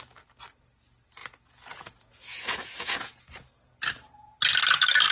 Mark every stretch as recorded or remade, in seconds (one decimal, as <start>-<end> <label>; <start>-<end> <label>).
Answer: 0.0-1.2 recorded; 1.2-3.7 remade; 3.7-5.1 recorded